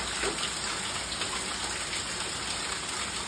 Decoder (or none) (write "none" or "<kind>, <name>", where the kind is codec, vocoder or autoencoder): none